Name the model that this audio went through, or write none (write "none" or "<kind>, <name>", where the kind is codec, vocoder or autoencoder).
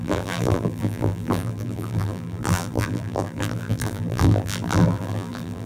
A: vocoder, BigVGAN v2